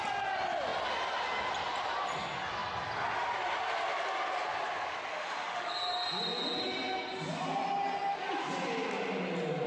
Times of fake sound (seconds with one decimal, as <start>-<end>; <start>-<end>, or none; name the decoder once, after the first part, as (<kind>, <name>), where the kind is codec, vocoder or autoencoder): 5.1-5.7 (autoencoder, DAC-VAE)